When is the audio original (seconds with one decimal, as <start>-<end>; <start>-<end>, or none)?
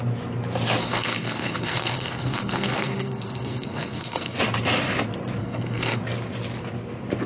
0.0-0.8; 4.4-5.4; 6.0-7.3